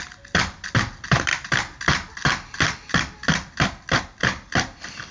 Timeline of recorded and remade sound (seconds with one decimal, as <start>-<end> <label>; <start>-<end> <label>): 0.0-5.1 recorded

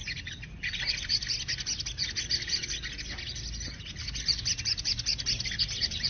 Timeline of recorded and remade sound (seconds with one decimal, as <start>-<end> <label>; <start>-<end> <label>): 0.0-6.1 recorded

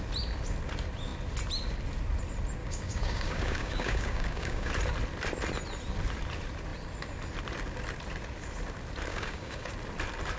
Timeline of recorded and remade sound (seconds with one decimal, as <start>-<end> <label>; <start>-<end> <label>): 0.0-2.6 recorded; 2.6-4.7 remade; 4.7-9.1 recorded; 9.1-9.7 remade; 9.7-10.4 recorded

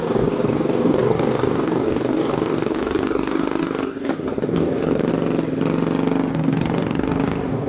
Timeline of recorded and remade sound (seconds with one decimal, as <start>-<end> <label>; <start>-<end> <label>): 0.0-5.1 remade; 5.1-6.3 recorded; 6.3-7.7 remade

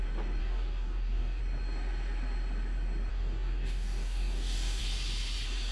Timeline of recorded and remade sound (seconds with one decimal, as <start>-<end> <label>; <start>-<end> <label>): 0.0-0.4 recorded; 0.4-1.4 remade; 1.4-3.1 recorded; 3.1-4.8 remade; 4.8-5.7 recorded